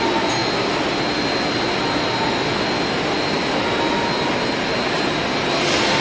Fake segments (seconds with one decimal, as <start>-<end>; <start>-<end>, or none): none